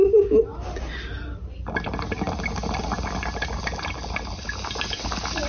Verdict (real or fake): real